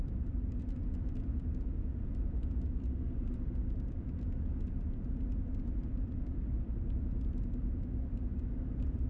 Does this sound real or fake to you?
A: fake